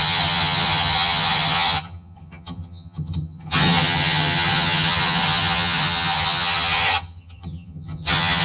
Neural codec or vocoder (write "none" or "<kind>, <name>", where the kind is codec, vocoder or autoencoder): vocoder, HiFi-GAN